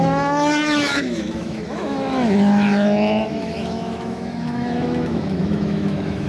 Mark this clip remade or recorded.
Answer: remade